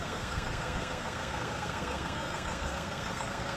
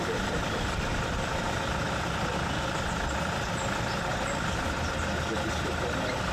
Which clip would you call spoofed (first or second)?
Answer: first